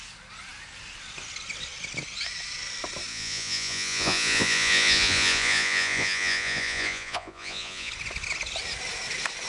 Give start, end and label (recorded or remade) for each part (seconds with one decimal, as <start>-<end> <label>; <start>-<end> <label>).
0.0-3.1 recorded; 3.1-7.9 remade; 7.9-9.5 recorded